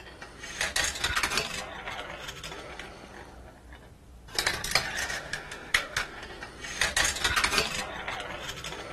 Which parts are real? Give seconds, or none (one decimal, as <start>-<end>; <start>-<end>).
0.0-5.0; 6.4-8.9